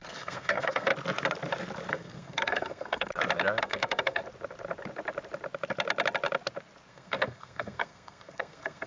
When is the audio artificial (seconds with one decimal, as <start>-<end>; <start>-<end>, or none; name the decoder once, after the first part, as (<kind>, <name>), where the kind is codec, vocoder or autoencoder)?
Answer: 0.0-0.9 (codec, SNAC); 1.9-3.1; 3.6-4.2; 6.9-8.9